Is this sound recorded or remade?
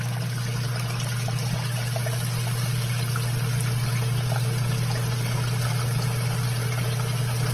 recorded